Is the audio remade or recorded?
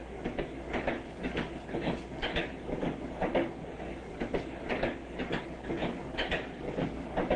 remade